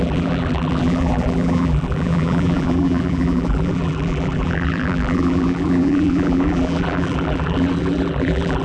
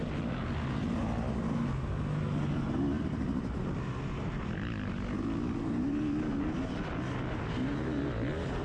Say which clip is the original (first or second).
second